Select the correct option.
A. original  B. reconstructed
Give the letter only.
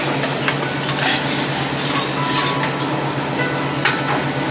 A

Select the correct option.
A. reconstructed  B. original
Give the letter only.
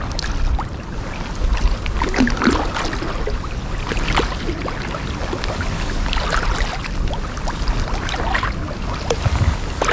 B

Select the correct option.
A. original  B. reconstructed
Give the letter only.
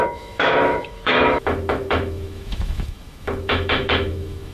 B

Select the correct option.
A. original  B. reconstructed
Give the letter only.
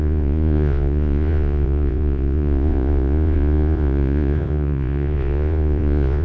B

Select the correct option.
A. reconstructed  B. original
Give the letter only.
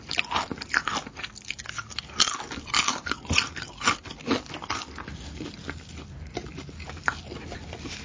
B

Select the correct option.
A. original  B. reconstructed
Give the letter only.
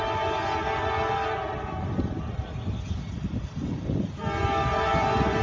A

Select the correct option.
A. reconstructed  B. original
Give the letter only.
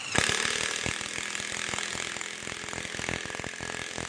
B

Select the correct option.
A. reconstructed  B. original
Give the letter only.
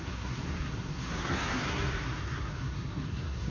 A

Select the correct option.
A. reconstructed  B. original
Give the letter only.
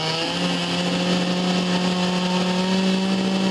B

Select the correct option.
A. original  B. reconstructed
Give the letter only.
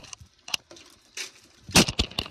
A